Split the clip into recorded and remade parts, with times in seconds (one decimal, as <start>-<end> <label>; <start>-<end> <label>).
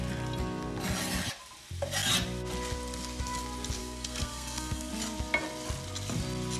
0.0-3.8 recorded; 3.8-4.9 remade; 4.9-6.6 recorded